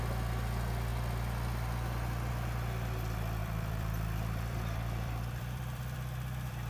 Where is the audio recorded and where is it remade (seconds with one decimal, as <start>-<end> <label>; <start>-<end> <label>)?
0.0-3.4 recorded; 3.4-6.7 remade

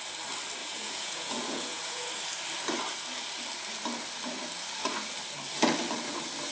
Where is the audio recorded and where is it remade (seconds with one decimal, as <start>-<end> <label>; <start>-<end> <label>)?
0.0-0.6 recorded; 0.6-2.1 remade; 2.1-6.5 recorded